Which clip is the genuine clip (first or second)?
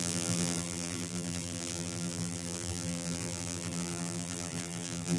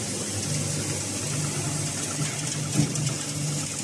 second